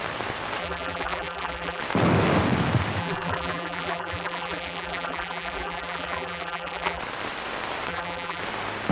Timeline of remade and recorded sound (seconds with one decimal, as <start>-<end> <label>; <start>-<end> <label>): 0.0-0.6 recorded; 0.6-1.8 remade; 1.8-3.0 recorded; 3.0-7.0 remade; 7.0-7.9 recorded; 7.9-8.4 remade; 8.4-8.9 recorded

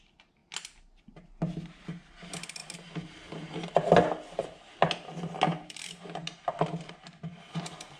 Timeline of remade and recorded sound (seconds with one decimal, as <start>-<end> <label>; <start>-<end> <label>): 0.0-2.6 recorded; 2.6-4.9 remade; 4.9-5.5 recorded; 5.5-6.9 remade; 6.9-8.0 recorded

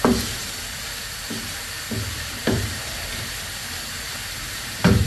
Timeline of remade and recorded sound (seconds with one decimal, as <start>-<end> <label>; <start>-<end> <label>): 0.0-2.4 recorded; 2.4-5.1 remade